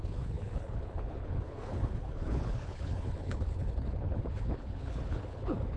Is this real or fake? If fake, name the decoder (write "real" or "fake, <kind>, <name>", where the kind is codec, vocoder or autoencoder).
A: fake, codec, HILCodec